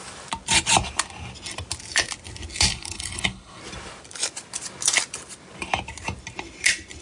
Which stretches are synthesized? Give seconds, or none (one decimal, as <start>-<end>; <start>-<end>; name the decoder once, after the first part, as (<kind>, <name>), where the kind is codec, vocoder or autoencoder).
2.7-3.6 (codec, HILCodec)